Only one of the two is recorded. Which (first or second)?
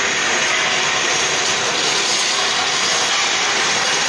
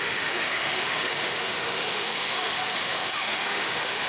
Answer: first